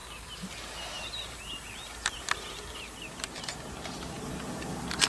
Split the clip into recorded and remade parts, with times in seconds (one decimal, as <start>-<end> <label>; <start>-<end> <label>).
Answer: 0.0-1.3 recorded; 1.3-1.9 remade; 1.9-5.1 recorded